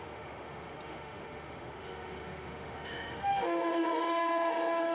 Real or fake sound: fake